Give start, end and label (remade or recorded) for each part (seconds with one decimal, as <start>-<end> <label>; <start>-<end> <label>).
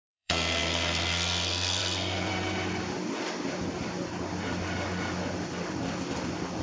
0.0-2.3 remade; 2.3-6.6 recorded